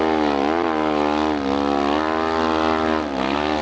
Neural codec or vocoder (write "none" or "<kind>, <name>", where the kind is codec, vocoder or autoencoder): none